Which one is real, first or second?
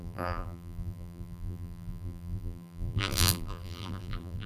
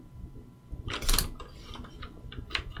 second